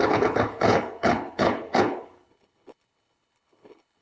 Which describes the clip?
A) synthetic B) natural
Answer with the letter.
A